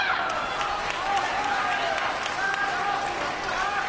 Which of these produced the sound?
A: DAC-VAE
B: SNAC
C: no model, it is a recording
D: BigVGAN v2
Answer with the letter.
C